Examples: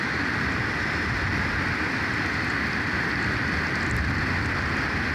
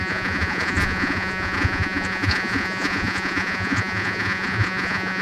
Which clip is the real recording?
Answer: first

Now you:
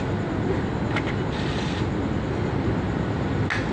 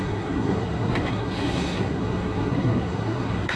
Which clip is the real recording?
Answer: first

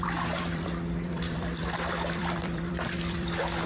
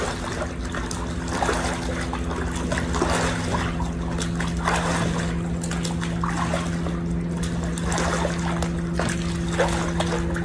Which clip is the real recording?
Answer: second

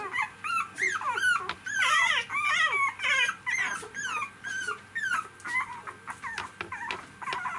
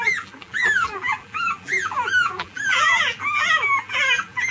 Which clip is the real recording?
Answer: first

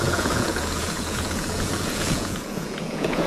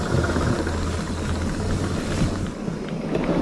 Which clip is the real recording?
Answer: second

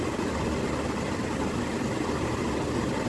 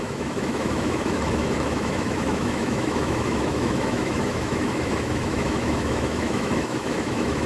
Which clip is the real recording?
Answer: first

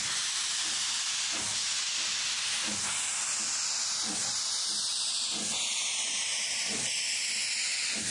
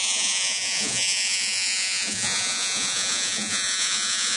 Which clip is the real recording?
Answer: first